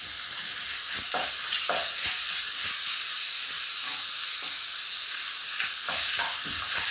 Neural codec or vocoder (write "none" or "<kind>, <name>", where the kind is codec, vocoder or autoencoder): none